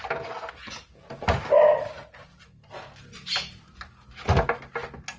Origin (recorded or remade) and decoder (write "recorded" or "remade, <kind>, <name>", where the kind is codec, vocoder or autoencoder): recorded